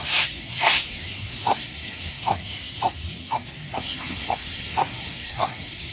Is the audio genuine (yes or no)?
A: no